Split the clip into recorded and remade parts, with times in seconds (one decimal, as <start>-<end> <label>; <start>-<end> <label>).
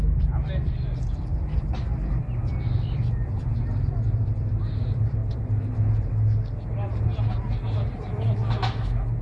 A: 0.0-9.2 recorded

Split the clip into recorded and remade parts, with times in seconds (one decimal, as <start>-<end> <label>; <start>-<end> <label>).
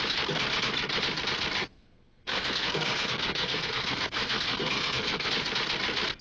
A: 0.0-1.6 recorded; 1.6-5.3 remade; 5.3-6.2 recorded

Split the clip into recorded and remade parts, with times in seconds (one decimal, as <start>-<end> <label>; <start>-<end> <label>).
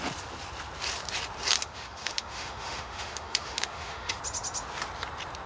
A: 0.0-1.6 recorded; 1.6-4.2 remade; 4.2-5.5 recorded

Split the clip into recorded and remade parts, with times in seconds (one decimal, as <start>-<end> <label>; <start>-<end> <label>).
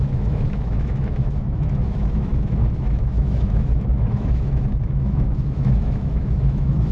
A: 0.0-6.9 remade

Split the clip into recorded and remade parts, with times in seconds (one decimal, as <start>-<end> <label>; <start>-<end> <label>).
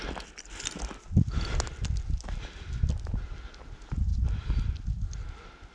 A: 0.0-1.7 recorded; 1.7-2.2 remade; 2.2-4.1 recorded; 4.1-4.9 remade; 4.9-5.7 recorded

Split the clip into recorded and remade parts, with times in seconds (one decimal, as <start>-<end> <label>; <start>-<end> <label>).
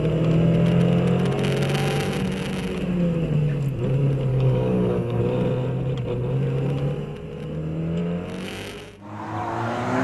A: 0.0-4.3 recorded; 4.3-5.2 remade; 5.2-10.0 recorded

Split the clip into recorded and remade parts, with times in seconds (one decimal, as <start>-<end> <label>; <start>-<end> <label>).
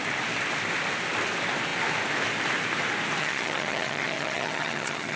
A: 0.0-3.2 recorded; 3.2-5.2 remade